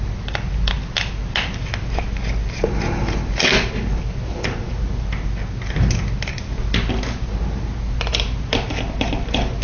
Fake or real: real